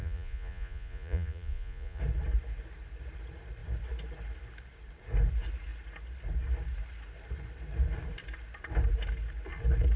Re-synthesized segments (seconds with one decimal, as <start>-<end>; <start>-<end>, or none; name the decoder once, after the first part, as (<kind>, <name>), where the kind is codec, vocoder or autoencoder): 0.0-2.0 (vocoder, Vocos)